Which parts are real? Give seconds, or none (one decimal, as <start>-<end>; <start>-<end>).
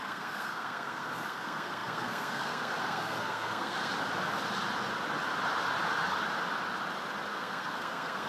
3.9-7.3